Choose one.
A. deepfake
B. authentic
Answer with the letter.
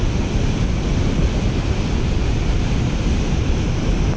B